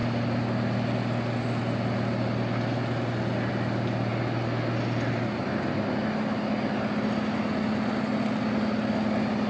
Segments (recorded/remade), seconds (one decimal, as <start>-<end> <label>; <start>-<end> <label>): 0.0-9.5 recorded